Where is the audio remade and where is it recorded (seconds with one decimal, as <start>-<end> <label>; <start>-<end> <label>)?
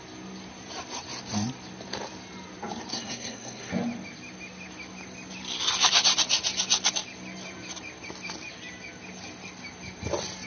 0.0-2.9 recorded; 2.9-3.7 remade; 3.7-10.5 recorded